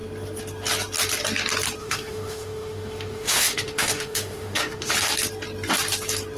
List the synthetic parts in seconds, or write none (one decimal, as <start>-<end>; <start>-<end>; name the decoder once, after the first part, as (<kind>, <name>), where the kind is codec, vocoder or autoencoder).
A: 1.8-4.9 (autoencoder, DAC-VAE)